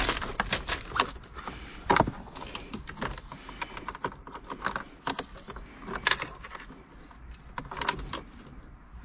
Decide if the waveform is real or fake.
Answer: real